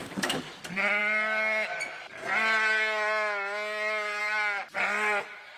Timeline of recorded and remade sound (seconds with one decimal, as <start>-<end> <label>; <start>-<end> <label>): 0.0-0.6 remade; 0.6-5.6 recorded